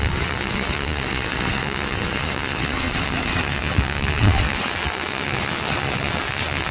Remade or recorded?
remade